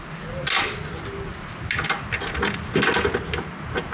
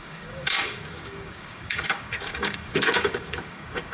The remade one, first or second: second